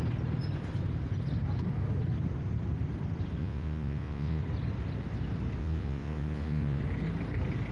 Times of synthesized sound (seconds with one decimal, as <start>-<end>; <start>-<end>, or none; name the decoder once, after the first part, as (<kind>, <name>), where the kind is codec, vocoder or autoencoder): 3.4-4.4 (vocoder, Vocos); 5.6-6.8